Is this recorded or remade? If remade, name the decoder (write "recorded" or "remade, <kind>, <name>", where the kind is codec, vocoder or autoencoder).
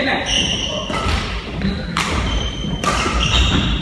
remade, vocoder, BigVGAN v2